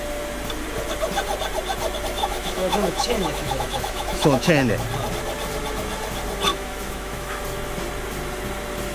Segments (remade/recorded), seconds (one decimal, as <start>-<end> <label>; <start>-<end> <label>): 0.0-2.2 recorded; 2.2-4.7 remade; 4.7-6.5 recorded; 6.5-7.4 remade; 7.4-8.9 recorded